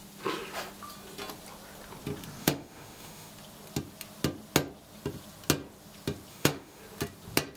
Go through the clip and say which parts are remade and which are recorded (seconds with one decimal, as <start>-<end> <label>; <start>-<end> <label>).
0.0-2.4 recorded; 2.4-3.3 remade; 3.3-6.3 recorded; 6.3-6.8 remade; 6.8-7.6 recorded